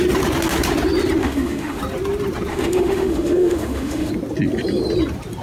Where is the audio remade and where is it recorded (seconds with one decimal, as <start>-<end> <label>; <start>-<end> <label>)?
0.0-1.2 recorded; 1.2-1.8 remade; 1.8-2.5 recorded; 2.5-4.1 remade; 4.1-5.4 recorded